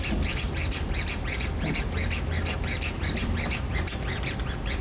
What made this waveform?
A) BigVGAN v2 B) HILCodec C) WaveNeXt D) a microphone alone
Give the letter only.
D